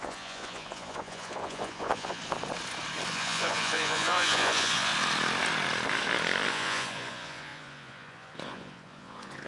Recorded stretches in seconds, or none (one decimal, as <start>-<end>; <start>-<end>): 2.2-3.1; 4.9-6.5

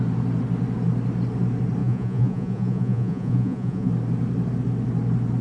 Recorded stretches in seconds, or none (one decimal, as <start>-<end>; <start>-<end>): 0.0-1.8; 3.9-5.4

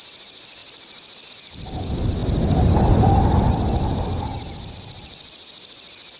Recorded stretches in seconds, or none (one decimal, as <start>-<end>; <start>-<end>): 0.0-6.2

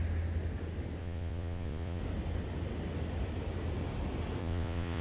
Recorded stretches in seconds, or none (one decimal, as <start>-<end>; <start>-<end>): 0.0-1.0; 2.0-4.4

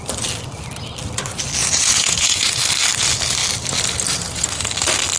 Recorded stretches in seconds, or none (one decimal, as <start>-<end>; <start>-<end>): 0.0-1.6; 2.5-5.2

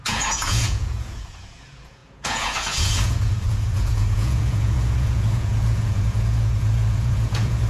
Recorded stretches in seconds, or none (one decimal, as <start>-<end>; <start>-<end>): none